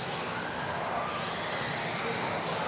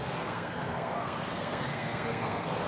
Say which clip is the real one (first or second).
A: first